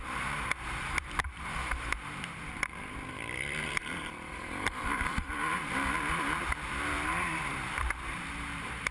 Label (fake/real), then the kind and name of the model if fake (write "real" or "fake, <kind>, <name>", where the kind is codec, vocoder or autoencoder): fake, vocoder, BigVGAN v2